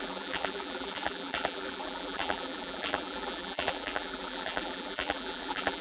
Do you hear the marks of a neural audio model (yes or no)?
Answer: yes